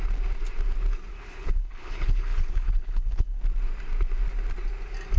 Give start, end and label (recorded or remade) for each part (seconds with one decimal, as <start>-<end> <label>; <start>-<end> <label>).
0.0-1.1 recorded; 1.1-3.4 remade; 3.4-5.2 recorded